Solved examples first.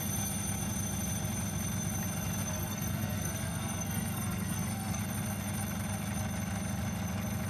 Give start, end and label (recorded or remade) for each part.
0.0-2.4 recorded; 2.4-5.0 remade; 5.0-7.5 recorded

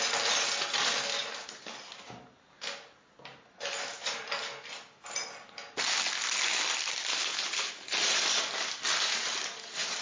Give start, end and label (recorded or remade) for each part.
0.0-7.1 recorded; 7.1-7.7 remade; 7.7-10.0 recorded

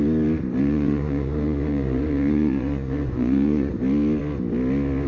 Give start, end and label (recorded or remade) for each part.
0.0-0.6 recorded; 0.6-3.7 remade; 3.7-5.1 recorded

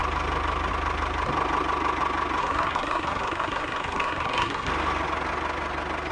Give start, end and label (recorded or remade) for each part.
0.0-2.4 recorded; 2.4-4.7 remade; 4.7-6.1 recorded

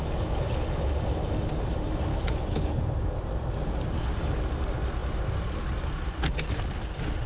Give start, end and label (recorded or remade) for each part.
0.0-2.1 recorded; 2.1-2.8 remade; 2.8-7.3 recorded